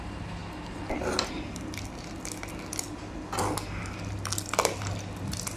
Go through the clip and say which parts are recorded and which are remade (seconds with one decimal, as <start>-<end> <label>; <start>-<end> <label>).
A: 0.0-0.4 remade; 0.4-3.8 recorded; 3.8-5.6 remade